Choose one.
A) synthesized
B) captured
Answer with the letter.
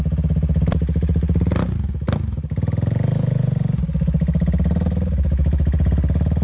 B